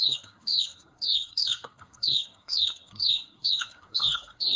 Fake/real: fake